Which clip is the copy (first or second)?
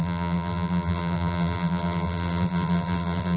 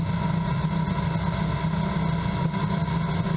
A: first